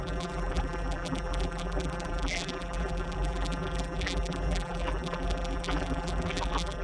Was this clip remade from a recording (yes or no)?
yes